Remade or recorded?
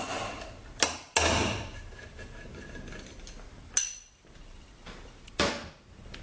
recorded